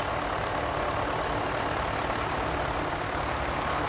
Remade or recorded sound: remade